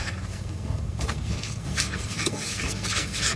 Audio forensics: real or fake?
fake